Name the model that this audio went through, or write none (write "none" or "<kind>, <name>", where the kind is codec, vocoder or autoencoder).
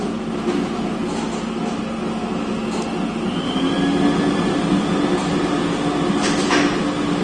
none